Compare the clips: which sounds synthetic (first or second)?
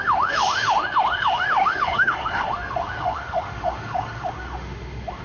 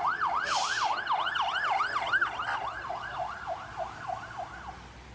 first